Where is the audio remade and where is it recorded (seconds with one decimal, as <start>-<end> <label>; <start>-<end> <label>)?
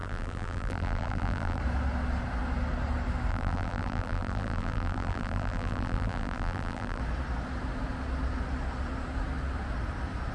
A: 0.0-1.6 remade; 1.6-3.3 recorded; 3.3-7.0 remade; 7.0-10.3 recorded